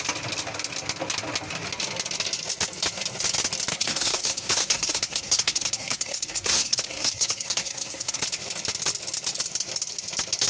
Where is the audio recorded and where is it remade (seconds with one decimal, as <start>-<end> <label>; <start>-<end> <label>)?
0.0-3.7 recorded; 3.7-8.2 remade; 8.2-10.5 recorded